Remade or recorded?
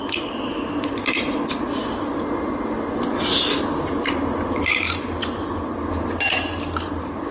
recorded